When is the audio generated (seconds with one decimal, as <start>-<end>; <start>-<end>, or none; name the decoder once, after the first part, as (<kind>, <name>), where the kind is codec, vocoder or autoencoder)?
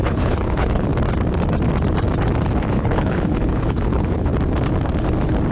0.0-0.9 (codec, HILCodec); 2.7-4.3